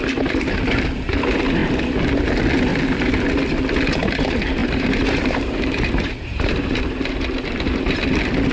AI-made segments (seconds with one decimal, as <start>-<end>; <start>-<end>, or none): 2.7-3.3; 4.6-6.5